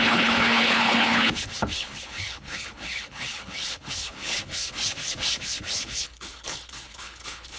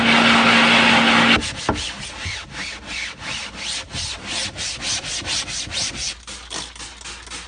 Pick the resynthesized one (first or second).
first